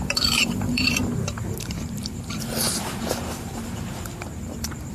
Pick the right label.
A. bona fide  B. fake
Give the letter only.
B